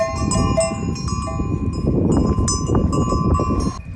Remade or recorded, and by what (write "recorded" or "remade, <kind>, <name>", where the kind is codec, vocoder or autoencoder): recorded